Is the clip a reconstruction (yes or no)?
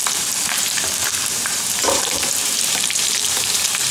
yes